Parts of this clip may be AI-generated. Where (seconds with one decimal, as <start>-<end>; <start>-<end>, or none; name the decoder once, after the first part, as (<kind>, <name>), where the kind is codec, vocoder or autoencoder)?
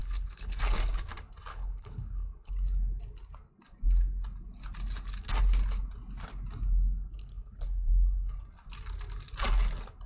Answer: 0.0-0.6 (codec, HILCodec); 1.5-2.5; 7.2-8.3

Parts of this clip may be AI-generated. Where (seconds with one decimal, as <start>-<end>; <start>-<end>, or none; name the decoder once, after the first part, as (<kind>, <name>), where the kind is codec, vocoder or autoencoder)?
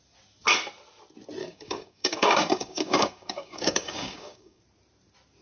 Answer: 1.4-4.6 (codec, DAC)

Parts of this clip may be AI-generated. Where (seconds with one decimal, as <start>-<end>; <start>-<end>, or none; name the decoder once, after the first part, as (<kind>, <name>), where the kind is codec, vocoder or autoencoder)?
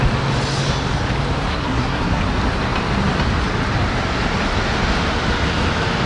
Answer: 1.5-2.2 (codec, SNAC)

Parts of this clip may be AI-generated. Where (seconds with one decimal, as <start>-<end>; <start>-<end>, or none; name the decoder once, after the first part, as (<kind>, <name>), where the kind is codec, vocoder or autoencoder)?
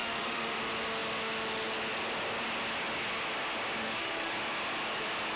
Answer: 0.0-0.6 (autoencoder, DAC-VAE); 3.8-4.3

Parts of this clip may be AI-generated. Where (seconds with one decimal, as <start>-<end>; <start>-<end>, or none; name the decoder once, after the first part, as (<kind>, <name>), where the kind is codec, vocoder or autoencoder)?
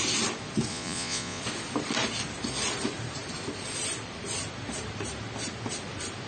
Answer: 0.7-1.4 (vocoder, Vocos)